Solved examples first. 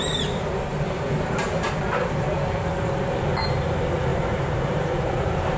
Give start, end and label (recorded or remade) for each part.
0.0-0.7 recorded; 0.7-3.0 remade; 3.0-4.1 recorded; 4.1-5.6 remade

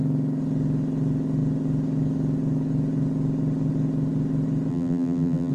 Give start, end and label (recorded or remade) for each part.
0.0-4.7 recorded; 4.7-5.5 remade